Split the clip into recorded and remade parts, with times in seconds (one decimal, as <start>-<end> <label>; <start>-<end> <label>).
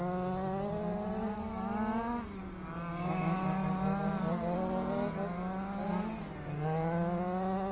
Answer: 0.0-7.7 recorded